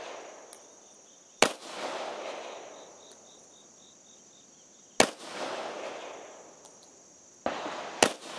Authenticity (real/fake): real